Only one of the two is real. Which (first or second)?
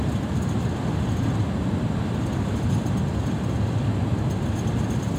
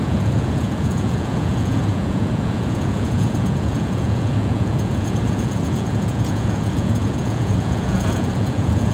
first